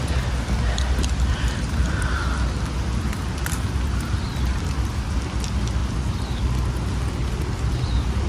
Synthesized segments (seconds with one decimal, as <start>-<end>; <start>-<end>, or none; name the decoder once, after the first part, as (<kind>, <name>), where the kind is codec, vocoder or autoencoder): none